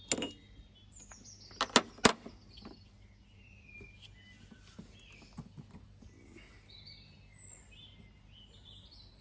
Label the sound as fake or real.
real